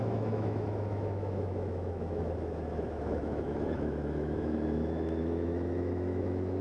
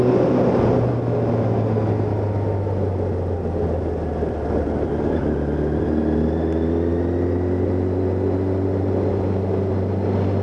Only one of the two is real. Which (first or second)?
second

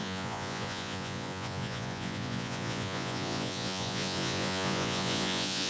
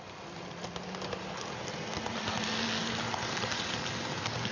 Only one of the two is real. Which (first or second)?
second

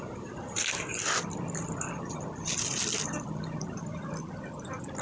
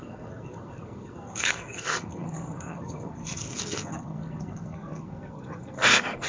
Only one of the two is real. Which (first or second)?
first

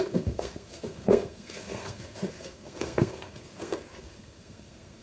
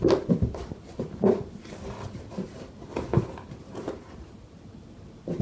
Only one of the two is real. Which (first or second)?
second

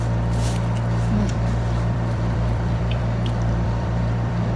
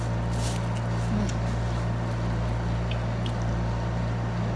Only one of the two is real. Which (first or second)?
second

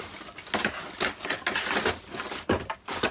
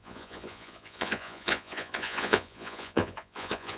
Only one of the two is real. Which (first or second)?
first